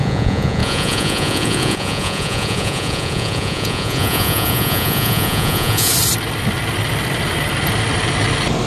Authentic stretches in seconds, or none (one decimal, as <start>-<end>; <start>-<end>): 5.9-8.7